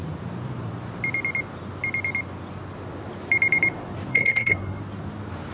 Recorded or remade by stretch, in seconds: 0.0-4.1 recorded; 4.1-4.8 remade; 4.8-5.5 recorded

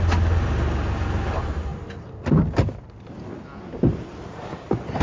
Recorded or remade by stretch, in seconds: 0.0-5.0 recorded

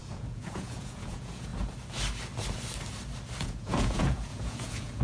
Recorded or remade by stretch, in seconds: 0.0-1.5 remade; 1.5-3.4 recorded; 3.4-5.0 remade

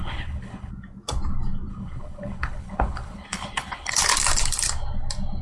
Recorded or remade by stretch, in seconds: 0.0-0.7 remade; 0.7-1.7 recorded; 1.7-3.9 remade; 3.9-5.4 recorded

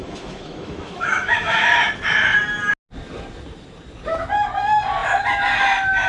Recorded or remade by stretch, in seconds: 0.0-1.9 remade; 1.9-6.1 recorded

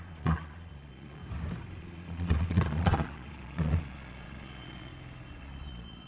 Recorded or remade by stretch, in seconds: 0.0-1.2 remade; 1.2-1.8 recorded; 1.8-4.9 remade; 4.9-5.4 recorded; 5.4-6.1 remade

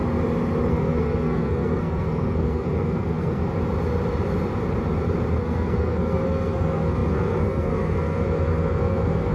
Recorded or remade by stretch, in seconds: 0.0-0.7 recorded; 0.7-3.4 remade; 3.4-5.4 recorded; 5.4-9.3 remade

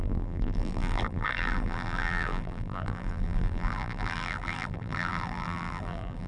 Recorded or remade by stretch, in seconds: 0.0-6.3 remade